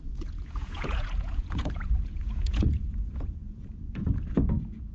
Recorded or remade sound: remade